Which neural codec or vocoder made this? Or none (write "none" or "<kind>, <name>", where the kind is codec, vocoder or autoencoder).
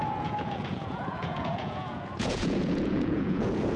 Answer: vocoder, Vocos